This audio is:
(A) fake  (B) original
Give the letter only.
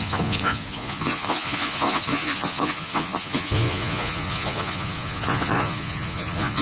A